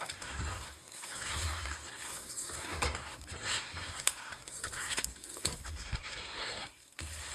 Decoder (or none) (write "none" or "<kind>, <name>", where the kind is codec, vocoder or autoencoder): codec, SNAC